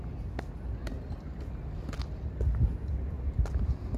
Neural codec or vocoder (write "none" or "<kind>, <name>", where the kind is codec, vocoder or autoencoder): none